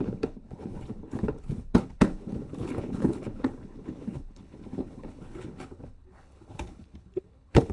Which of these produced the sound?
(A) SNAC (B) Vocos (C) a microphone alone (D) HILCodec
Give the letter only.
D